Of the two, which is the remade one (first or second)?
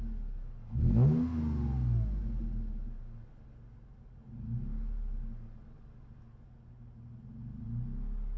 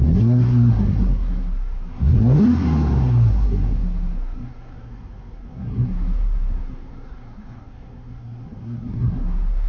second